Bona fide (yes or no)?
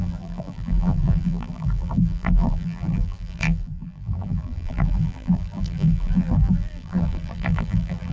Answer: no